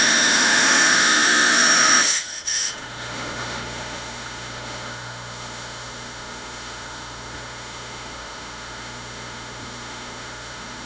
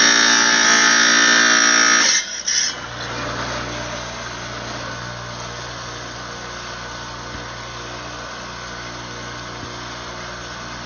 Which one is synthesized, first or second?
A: first